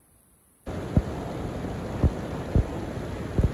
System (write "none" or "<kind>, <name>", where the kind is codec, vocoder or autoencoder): none